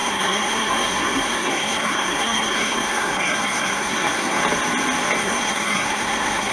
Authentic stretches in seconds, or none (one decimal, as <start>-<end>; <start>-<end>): 4.4-5.2